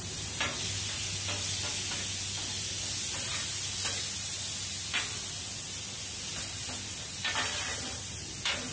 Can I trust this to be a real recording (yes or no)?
yes